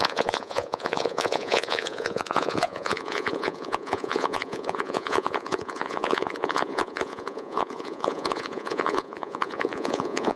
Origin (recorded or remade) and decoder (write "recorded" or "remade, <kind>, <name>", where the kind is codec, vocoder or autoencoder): remade, vocoder, Vocos